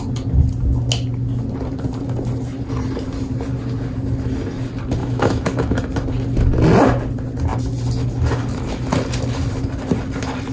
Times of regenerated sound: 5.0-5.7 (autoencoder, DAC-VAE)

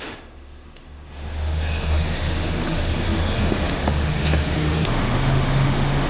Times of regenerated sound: 0.0-6.1 (autoencoder, DAC-VAE)

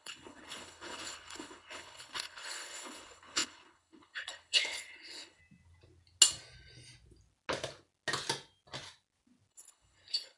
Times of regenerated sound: 0.0-5.4 (codec, HILCodec); 9.5-10.4

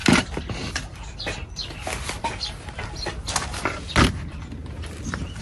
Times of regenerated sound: none

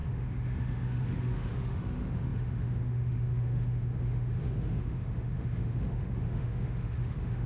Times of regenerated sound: 0.0-7.5 (autoencoder, DAC-VAE)

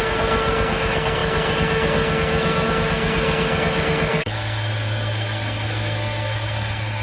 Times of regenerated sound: 0.0-7.0 (codec, SNAC)

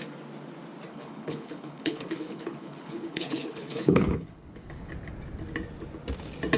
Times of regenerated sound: 0.9-4.9 (codec, HILCodec)

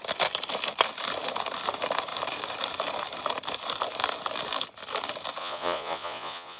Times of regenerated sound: 5.4-6.6 (vocoder, Vocos)